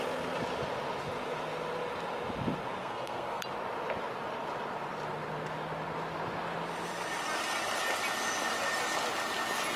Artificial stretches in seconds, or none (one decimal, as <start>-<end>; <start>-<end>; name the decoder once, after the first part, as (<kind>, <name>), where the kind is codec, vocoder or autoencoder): 2.8-3.4 (codec, SNAC)